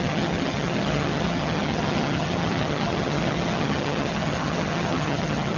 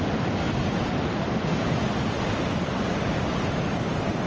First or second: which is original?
second